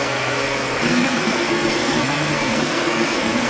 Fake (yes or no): yes